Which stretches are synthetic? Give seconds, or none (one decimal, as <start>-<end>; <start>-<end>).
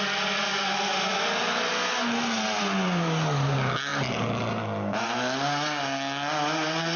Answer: 0.5-1.7